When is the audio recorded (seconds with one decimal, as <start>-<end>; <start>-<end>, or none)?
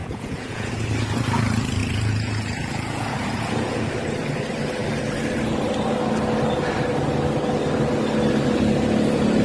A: 0.7-1.8; 3.9-9.4